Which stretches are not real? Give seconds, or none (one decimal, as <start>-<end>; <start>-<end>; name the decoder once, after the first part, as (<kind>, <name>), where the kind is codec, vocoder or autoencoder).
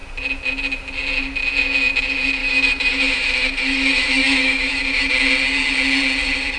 2.4-5.1 (autoencoder, DAC-VAE)